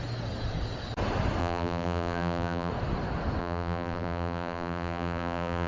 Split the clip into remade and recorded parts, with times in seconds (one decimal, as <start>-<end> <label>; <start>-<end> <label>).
0.0-1.4 recorded; 1.4-2.7 remade; 2.7-3.4 recorded; 3.4-5.7 remade